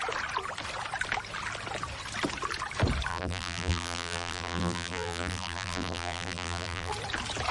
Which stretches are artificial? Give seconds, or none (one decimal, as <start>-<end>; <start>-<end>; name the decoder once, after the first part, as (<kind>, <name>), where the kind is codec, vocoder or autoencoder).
3.1-6.9 (vocoder, BigVGAN v2)